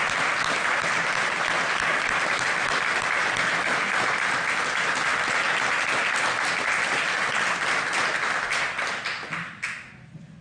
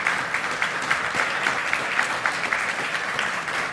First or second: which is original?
first